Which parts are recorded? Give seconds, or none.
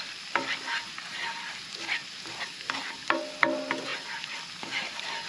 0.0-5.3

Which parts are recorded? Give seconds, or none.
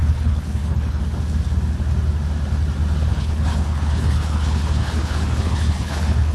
1.0-3.1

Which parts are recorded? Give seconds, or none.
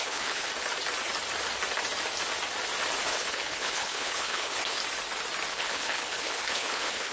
0.5-3.1; 4.8-5.5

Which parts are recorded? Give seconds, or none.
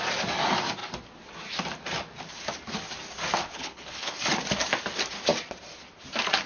0.0-3.4; 4.2-6.5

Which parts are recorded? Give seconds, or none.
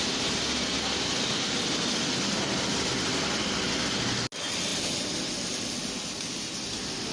0.0-7.1